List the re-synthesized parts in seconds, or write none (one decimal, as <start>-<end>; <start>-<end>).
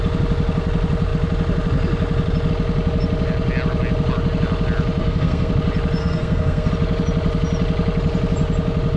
5.0-5.5; 6.0-6.7